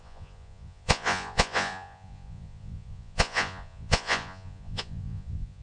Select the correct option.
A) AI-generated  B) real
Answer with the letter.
A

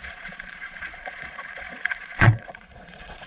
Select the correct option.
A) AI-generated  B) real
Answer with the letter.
A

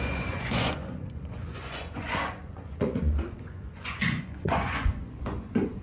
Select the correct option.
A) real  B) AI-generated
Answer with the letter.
B